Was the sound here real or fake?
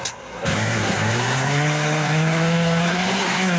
fake